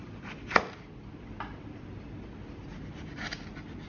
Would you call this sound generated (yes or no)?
no